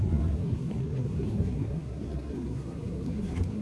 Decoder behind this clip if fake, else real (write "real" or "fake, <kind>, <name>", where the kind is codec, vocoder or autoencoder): fake, codec, SNAC